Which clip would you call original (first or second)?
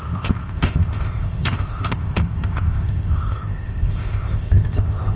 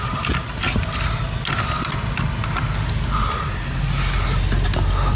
second